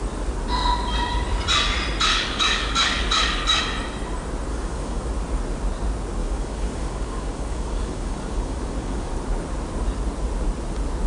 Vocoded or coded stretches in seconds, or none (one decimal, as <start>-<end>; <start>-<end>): 2.1-3.6; 4.5-5.1; 6.2-9.1